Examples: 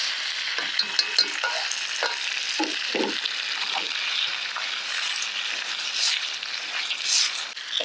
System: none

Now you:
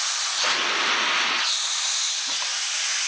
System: none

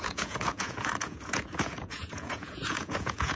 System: vocoder, Vocos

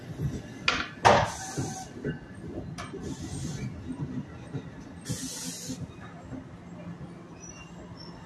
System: none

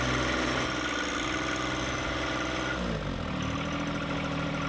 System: none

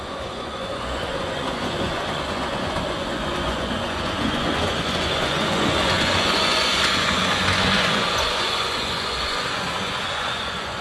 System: vocoder, Vocos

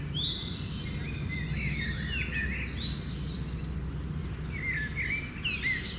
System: none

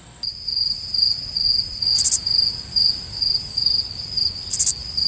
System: none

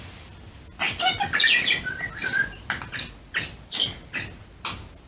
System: none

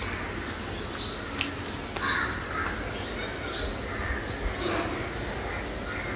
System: none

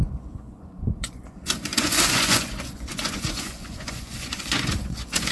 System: vocoder, Vocos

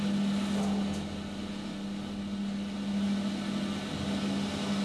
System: none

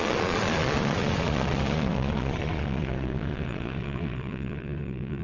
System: vocoder, Vocos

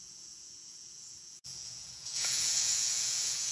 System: vocoder, Vocos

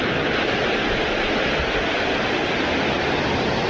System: none